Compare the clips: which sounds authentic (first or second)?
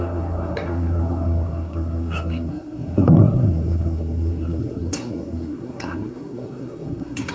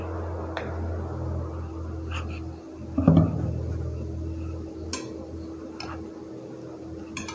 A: second